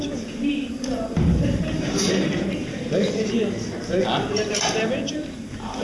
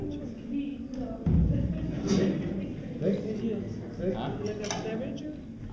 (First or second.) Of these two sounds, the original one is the second